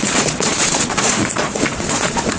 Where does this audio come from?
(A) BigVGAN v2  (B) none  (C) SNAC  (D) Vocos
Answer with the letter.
D